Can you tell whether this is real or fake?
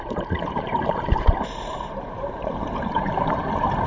fake